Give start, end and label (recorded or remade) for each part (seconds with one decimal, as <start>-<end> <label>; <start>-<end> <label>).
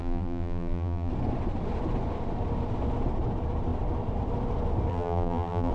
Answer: 0.0-1.1 remade; 1.1-4.9 recorded; 4.9-5.7 remade